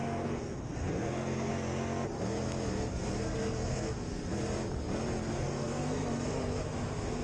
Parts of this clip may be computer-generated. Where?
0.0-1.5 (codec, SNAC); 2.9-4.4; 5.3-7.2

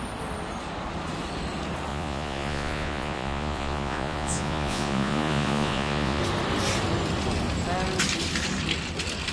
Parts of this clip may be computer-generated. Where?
1.9-6.2 (vocoder, Vocos)

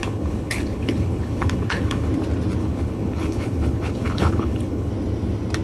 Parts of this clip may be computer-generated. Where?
0.0-2.1 (codec, HILCodec); 2.6-4.9

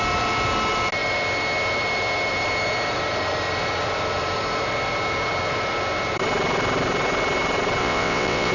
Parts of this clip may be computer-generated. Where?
7.8-8.5 (vocoder, WaveNeXt)

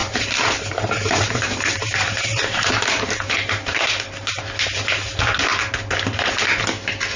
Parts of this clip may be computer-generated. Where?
0.0-4.3 (vocoder, BigVGAN v2)

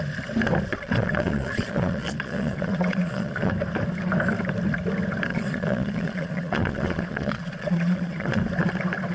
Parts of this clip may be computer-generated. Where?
0.7-3.5 (vocoder, Vocos); 5.3-8.4

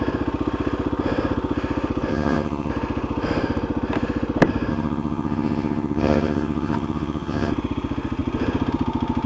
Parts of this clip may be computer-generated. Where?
2.1-2.7 (vocoder, HiFi-GAN); 4.7-7.5